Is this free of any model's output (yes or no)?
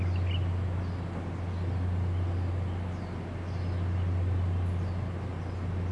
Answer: yes